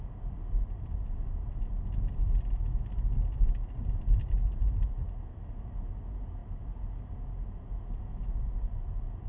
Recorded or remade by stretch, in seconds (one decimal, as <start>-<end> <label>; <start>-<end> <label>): 0.0-9.3 recorded